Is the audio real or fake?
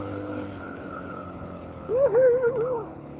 fake